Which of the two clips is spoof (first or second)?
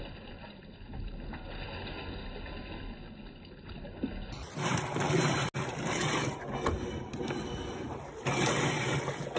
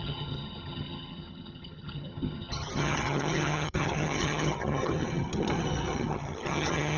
second